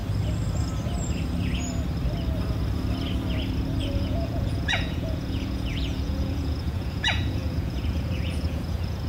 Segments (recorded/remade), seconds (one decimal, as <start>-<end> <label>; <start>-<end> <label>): 0.0-3.8 recorded; 3.8-9.1 remade